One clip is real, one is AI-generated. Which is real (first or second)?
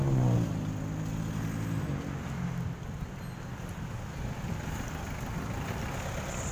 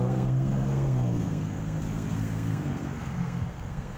first